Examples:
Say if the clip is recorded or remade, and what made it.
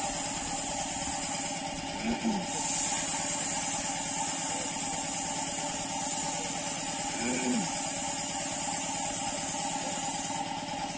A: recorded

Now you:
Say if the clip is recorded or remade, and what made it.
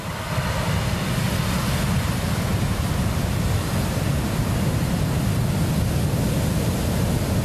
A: recorded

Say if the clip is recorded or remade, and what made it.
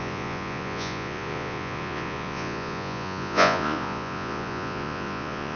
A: remade, vocoder, Vocos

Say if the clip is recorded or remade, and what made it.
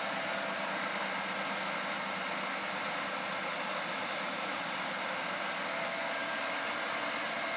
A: recorded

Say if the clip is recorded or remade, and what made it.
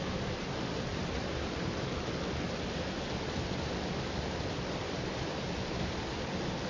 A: recorded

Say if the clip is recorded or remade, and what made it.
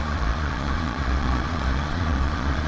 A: remade, vocoder, Vocos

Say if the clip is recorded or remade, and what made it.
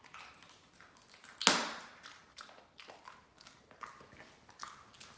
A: recorded